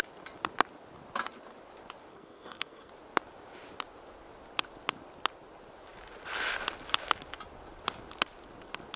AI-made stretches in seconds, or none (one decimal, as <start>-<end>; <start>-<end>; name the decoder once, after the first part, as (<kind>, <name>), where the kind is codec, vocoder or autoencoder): 2.1-2.9 (codec, SNAC)